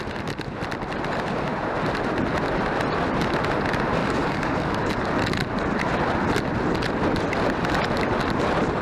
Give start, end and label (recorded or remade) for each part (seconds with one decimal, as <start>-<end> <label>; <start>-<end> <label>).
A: 0.0-4.0 recorded; 4.0-5.1 remade; 5.1-8.8 recorded